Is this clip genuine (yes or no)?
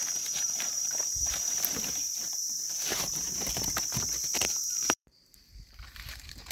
no